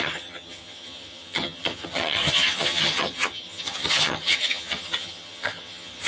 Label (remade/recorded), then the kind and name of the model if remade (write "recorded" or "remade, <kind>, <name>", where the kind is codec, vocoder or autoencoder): remade, vocoder, HiFi-GAN